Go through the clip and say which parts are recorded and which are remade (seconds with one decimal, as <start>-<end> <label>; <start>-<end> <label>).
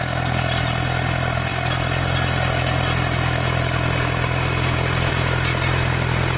0.0-6.4 recorded